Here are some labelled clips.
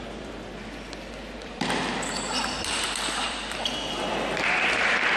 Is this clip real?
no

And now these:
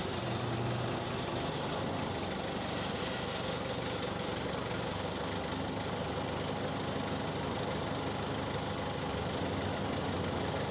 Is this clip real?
yes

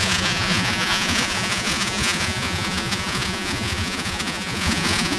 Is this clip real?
no